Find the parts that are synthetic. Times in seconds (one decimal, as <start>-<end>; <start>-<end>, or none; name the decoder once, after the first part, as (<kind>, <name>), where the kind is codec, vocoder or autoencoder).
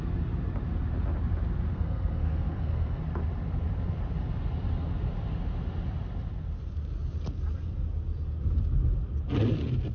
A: 1.7-3.0 (codec, SNAC)